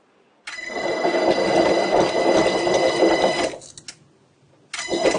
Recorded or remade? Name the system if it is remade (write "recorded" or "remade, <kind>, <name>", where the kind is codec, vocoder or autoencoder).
recorded